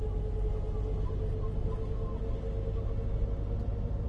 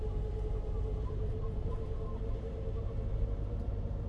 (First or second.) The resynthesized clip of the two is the second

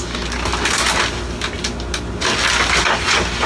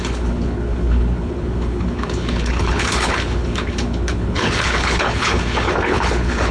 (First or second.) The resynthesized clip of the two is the second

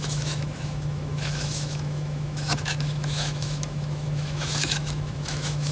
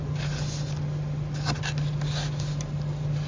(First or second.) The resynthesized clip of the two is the first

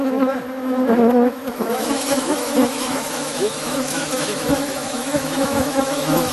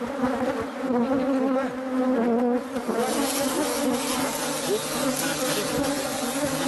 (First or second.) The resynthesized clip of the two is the first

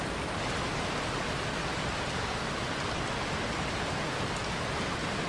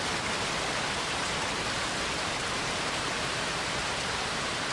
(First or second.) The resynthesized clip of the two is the second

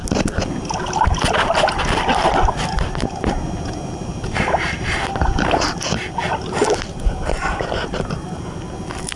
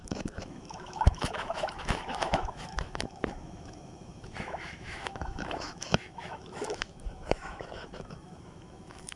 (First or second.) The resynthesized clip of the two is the second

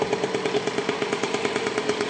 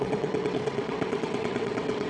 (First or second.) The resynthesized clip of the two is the second